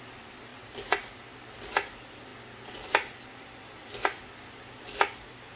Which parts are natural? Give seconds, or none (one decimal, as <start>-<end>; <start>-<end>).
0.0-5.6